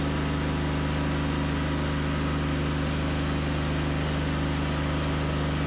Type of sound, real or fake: real